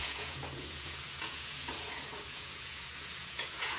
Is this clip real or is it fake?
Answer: fake